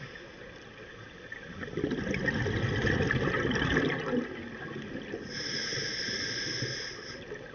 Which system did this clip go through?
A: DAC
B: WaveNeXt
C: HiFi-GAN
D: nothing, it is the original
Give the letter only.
D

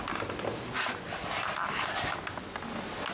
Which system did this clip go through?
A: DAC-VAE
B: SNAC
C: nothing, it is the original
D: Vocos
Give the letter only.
C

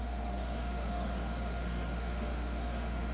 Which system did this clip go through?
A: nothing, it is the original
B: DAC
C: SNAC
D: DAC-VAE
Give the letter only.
D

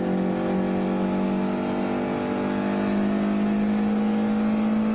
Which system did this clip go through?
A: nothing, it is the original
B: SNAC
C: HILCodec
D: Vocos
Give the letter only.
A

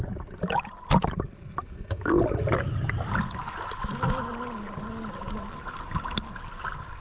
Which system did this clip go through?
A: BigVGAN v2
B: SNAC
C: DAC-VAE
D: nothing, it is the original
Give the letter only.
D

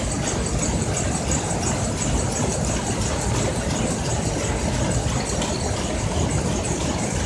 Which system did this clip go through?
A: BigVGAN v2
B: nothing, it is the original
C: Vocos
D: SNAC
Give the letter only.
B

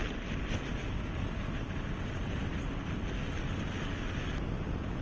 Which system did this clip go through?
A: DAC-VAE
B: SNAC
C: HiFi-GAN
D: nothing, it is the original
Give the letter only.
D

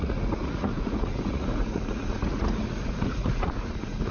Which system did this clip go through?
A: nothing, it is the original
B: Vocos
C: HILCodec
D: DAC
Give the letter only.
B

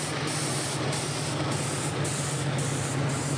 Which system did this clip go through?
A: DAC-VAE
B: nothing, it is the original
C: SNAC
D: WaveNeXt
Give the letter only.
B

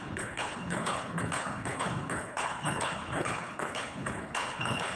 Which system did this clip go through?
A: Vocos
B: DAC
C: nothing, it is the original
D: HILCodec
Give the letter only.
D